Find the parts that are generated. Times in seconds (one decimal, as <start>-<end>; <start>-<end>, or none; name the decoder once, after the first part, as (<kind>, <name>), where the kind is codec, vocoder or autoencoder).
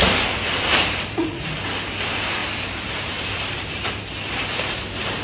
0.0-1.5 (vocoder, BigVGAN v2); 2.4-3.8